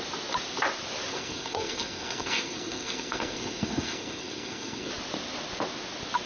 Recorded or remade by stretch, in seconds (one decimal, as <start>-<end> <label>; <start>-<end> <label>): 0.0-1.1 recorded; 1.1-4.9 remade; 4.9-6.3 recorded